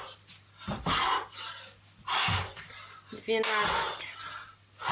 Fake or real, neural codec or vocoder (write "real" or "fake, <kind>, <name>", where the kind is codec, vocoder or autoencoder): real